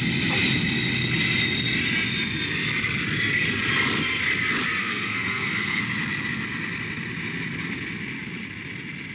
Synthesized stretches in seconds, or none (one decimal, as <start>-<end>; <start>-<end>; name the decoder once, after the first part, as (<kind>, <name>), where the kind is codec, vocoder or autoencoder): 4.8-5.8 (codec, SNAC)